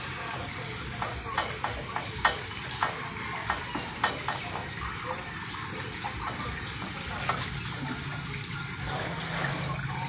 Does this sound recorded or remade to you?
recorded